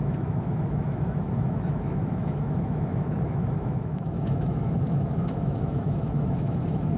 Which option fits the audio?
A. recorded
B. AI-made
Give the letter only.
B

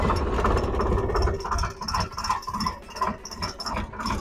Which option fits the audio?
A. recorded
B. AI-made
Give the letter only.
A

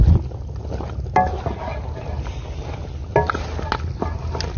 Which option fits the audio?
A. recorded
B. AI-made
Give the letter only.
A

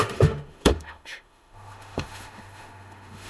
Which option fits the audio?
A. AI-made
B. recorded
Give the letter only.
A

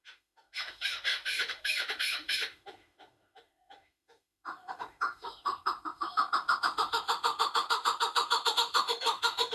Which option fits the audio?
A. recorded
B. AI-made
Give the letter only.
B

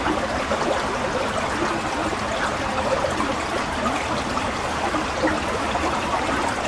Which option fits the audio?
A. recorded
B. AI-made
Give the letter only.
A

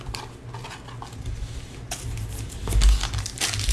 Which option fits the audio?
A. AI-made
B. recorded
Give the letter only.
B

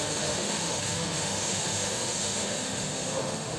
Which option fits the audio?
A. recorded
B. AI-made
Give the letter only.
B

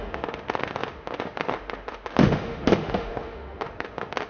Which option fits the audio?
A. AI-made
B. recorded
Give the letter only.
A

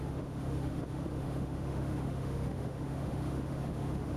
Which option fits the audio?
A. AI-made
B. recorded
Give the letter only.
A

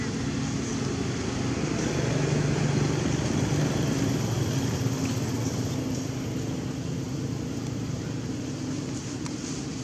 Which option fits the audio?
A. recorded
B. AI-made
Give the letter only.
A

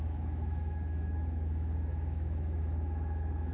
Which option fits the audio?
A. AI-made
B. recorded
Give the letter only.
A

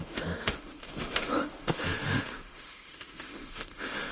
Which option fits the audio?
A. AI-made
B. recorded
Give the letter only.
A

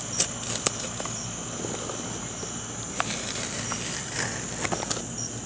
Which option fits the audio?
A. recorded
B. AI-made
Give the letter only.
A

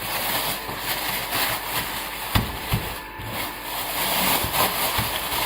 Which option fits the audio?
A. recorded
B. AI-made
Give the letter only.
A